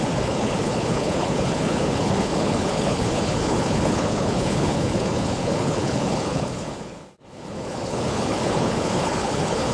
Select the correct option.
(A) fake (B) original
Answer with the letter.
A